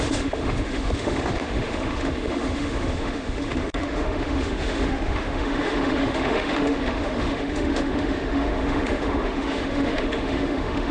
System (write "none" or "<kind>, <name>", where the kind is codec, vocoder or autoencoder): autoencoder, DAC-VAE